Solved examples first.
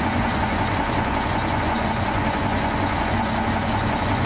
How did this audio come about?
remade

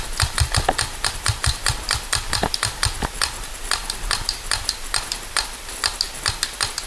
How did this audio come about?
recorded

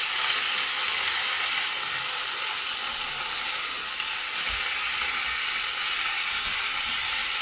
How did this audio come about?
recorded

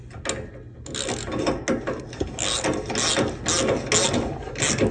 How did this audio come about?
recorded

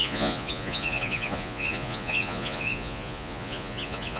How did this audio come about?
remade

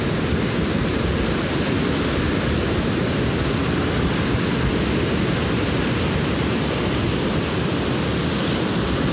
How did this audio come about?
recorded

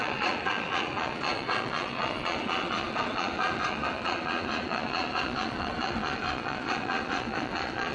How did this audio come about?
remade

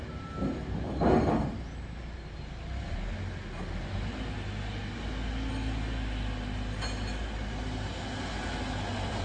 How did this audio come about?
recorded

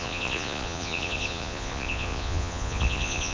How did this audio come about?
remade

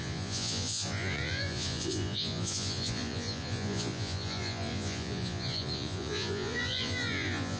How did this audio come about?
remade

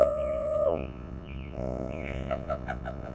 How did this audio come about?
remade